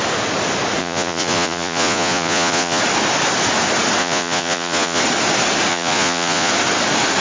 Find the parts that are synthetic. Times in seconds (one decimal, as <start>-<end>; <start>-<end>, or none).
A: 0.8-2.8; 4.0-5.0; 5.7-6.5

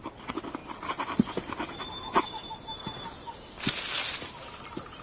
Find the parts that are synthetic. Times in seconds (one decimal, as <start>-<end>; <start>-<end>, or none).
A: none

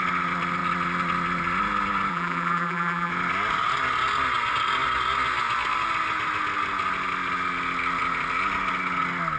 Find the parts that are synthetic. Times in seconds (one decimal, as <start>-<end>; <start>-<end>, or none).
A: 2.1-3.1

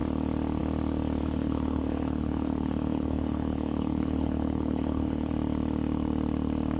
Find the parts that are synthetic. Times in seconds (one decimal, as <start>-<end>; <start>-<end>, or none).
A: 1.2-5.3